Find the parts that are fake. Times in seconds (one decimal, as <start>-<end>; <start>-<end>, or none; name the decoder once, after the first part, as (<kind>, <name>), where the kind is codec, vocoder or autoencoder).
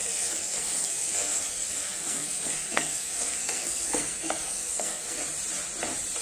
0.0-5.2 (codec, SNAC)